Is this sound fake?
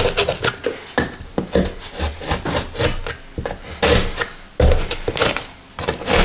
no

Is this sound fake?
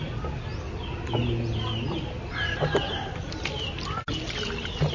no